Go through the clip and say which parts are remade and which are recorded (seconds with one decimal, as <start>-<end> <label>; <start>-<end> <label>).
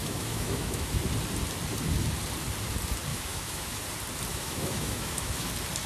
0.0-1.0 remade; 1.0-3.1 recorded; 3.1-3.8 remade; 3.8-4.3 recorded; 4.3-5.5 remade; 5.5-5.9 recorded